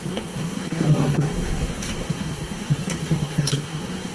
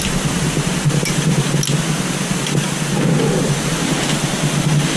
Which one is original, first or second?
second